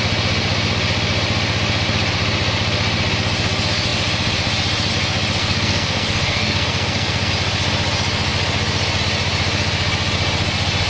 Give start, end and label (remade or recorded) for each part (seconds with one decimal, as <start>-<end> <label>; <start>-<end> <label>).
0.0-5.4 recorded; 5.4-7.3 remade; 7.3-10.9 recorded